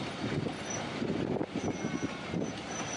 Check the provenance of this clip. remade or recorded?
recorded